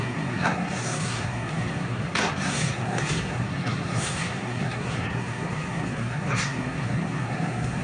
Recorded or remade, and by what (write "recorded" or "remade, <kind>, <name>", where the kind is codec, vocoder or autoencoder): remade, codec, SNAC